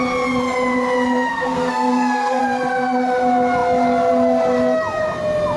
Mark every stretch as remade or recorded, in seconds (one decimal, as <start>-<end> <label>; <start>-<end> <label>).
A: 0.0-1.3 recorded; 1.3-2.4 remade; 2.4-5.6 recorded